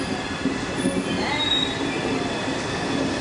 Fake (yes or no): no